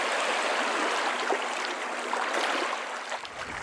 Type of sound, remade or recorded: recorded